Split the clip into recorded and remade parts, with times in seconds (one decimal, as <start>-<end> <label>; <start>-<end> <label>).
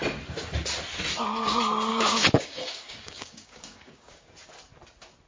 0.0-1.9 recorded; 1.9-4.3 remade; 4.3-5.3 recorded